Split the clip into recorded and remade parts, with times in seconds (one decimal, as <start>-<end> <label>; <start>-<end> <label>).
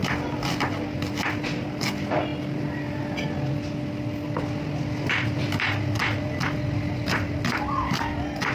0.0-8.5 recorded